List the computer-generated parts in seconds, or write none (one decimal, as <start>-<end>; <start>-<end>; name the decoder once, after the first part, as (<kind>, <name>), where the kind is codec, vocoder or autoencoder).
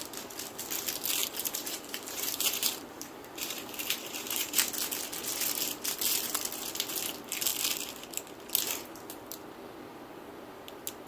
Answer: 1.2-4.5 (vocoder, BigVGAN v2)